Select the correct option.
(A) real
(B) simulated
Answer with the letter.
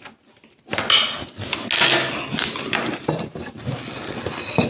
A